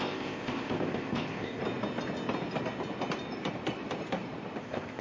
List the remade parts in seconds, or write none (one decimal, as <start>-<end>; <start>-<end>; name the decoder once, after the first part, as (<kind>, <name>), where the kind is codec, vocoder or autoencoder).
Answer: 0.0-1.6 (codec, ZipCodec); 4.6-5.0